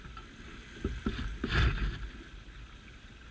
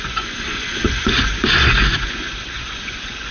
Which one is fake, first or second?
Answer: second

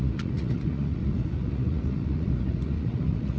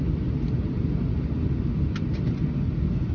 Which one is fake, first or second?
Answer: first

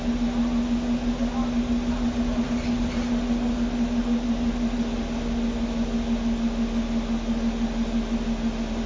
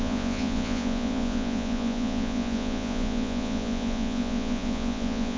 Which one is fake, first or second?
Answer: second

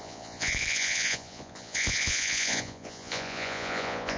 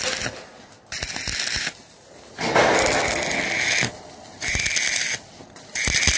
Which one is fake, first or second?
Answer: first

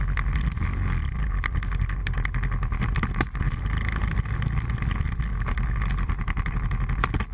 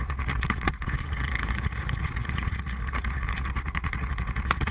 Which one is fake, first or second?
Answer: second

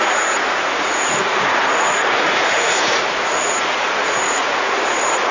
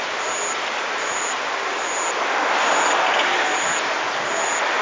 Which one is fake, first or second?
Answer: first